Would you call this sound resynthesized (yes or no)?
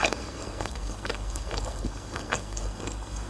yes